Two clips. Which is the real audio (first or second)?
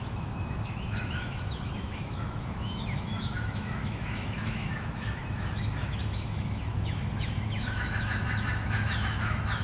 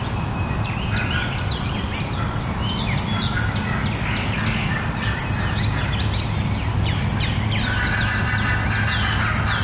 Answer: second